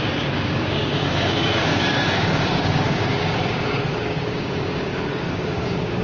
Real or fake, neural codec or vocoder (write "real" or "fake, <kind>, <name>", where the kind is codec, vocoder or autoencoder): fake, codec, DAC